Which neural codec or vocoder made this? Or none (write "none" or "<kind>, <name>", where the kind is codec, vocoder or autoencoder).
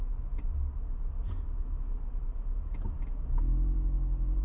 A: none